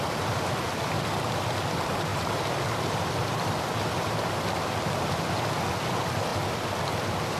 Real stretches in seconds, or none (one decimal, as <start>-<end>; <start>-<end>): 0.0-7.4